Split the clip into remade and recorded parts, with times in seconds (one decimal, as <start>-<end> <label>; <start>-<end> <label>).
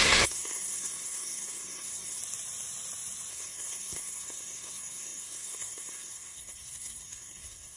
0.0-2.2 remade; 2.2-3.3 recorded; 3.3-7.8 remade